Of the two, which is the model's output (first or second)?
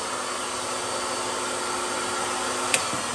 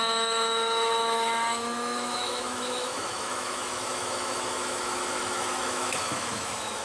second